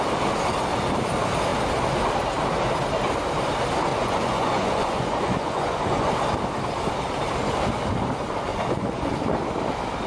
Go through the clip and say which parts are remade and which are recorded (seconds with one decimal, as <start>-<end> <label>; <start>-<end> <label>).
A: 0.0-3.9 recorded; 3.9-6.1 remade; 6.1-8.5 recorded; 8.5-9.1 remade; 9.1-10.1 recorded

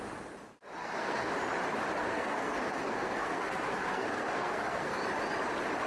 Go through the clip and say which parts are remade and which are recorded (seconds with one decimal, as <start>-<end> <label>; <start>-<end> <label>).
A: 0.0-0.8 recorded; 0.8-1.3 remade; 1.3-2.0 recorded; 2.0-5.0 remade; 5.0-5.9 recorded

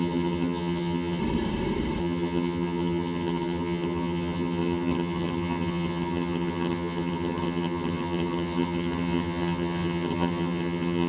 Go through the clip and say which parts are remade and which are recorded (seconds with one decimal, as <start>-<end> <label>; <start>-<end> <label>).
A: 0.0-1.2 remade; 1.2-2.0 recorded; 2.0-11.1 remade

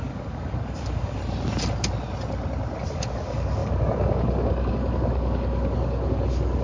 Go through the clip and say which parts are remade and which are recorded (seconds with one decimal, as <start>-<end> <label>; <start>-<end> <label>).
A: 0.0-1.2 remade; 1.2-2.9 recorded; 2.9-6.6 remade

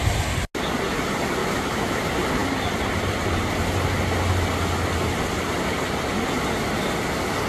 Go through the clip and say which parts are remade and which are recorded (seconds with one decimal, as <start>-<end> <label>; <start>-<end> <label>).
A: 0.0-1.4 recorded; 1.4-2.0 remade; 2.0-7.5 recorded

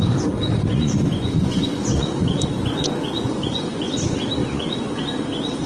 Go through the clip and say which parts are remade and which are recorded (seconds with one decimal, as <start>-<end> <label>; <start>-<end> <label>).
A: 0.0-0.7 recorded; 0.7-4.0 remade; 4.0-4.4 recorded; 4.4-5.0 remade; 5.0-5.7 recorded

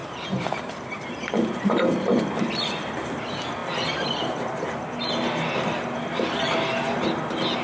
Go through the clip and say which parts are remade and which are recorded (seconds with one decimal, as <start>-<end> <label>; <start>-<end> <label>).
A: 0.0-2.4 remade; 2.4-7.6 recorded

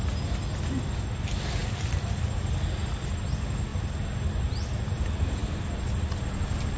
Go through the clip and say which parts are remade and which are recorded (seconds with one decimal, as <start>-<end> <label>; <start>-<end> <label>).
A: 0.0-6.8 recorded